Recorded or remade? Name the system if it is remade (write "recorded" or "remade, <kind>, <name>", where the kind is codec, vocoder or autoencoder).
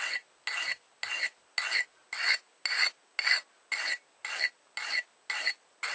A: recorded